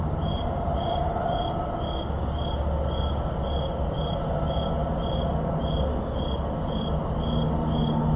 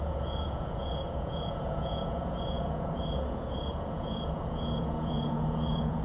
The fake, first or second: second